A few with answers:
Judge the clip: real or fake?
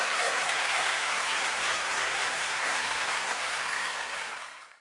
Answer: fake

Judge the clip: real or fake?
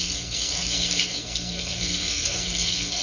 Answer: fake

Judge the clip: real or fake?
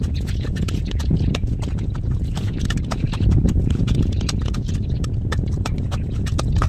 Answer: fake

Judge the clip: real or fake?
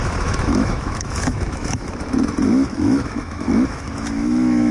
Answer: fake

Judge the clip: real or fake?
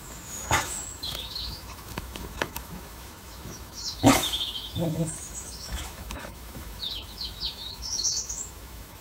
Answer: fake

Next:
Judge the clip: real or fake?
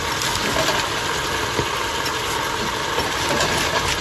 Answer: real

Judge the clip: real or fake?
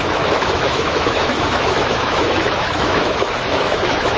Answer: fake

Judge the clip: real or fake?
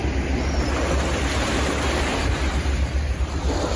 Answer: real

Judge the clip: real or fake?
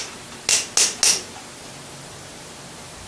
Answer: real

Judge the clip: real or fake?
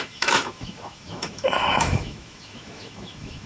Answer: fake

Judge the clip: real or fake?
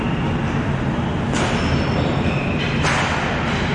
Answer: real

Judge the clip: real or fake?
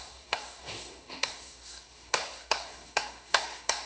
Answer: fake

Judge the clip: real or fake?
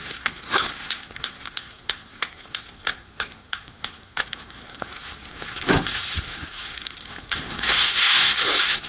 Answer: fake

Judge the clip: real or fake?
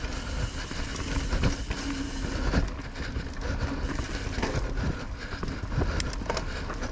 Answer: real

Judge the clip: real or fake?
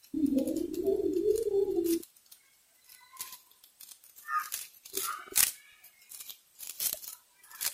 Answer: real